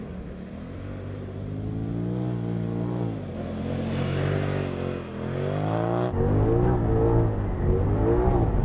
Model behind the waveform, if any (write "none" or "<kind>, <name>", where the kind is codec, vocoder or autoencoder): none